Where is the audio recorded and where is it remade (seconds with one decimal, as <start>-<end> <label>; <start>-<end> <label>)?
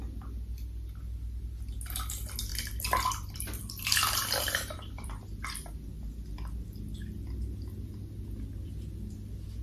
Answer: 0.0-2.5 recorded; 2.5-5.1 remade; 5.1-9.6 recorded